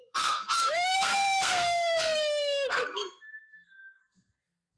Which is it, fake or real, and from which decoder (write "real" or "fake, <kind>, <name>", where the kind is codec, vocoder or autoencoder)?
fake, codec, SNAC